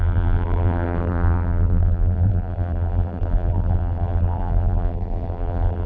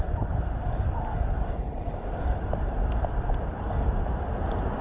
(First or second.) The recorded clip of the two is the second